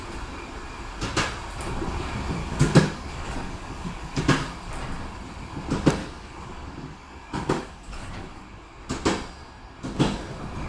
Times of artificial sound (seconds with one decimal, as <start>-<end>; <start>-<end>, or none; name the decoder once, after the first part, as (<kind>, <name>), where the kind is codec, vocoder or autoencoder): 2.4-4.2 (codec, DAC); 6.0-8.7